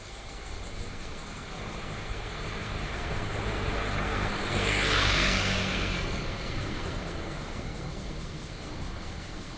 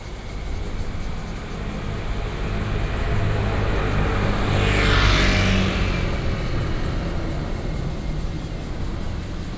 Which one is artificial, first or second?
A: first